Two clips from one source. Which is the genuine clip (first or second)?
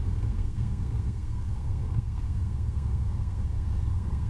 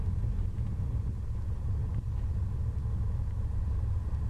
second